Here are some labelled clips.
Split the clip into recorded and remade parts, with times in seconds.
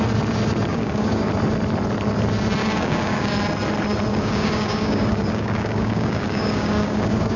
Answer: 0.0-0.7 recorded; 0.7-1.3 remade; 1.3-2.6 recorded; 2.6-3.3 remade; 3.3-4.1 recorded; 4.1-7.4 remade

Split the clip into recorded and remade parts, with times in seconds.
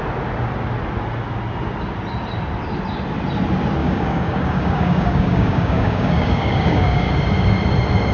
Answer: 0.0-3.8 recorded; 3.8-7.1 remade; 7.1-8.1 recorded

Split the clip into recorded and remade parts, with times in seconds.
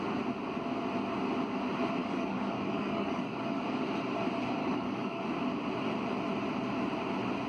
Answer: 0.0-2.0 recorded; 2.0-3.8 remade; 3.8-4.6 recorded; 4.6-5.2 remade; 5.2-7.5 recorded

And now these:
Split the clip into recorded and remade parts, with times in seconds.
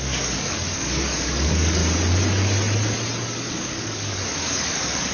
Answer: 0.0-1.8 remade; 1.8-3.2 recorded; 3.2-5.1 remade